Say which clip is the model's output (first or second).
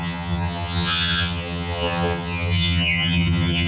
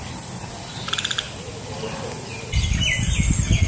first